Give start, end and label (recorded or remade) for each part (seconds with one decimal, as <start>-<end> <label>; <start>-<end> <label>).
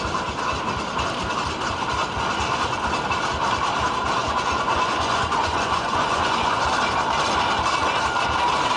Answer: 0.0-4.2 recorded; 4.2-6.6 remade; 6.6-8.8 recorded